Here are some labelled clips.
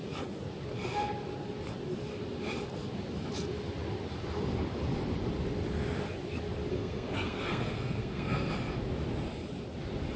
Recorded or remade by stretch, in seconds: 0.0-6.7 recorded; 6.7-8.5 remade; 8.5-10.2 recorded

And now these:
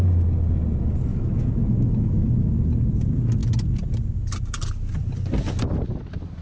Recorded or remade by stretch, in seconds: 0.0-1.1 recorded; 1.1-2.3 remade; 2.3-6.4 recorded

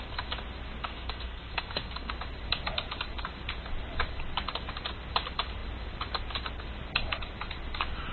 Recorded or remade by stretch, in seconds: 0.0-0.8 recorded; 0.8-2.1 remade; 2.1-8.1 recorded

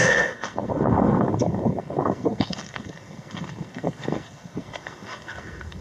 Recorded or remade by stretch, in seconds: 0.0-5.8 remade

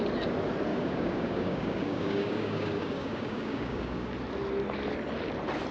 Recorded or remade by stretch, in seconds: 0.0-0.7 recorded; 0.7-4.1 remade; 4.1-5.7 recorded

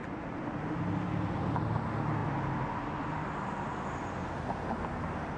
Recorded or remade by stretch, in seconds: 0.0-5.4 recorded

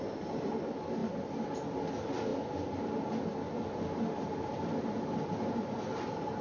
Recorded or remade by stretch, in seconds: 0.0-6.4 recorded